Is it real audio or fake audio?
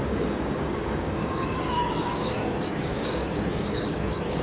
fake